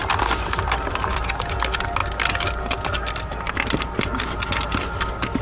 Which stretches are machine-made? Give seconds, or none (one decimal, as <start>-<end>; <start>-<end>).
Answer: 0.0-1.1